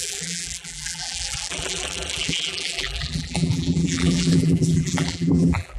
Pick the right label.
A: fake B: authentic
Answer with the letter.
A